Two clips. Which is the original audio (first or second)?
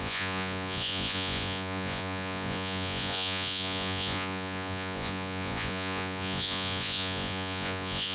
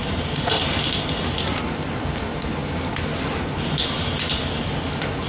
second